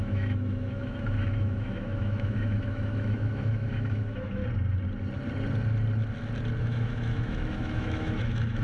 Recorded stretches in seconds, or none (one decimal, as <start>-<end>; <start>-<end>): 4.4-6.6